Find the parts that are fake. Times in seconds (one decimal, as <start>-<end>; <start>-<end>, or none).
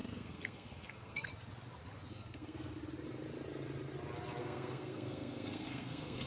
0.0-1.3; 2.1-2.8; 4.4-6.3